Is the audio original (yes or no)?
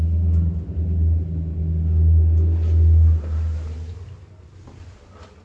yes